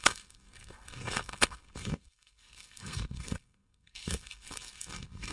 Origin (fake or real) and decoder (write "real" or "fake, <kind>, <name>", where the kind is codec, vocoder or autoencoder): fake, codec, SNAC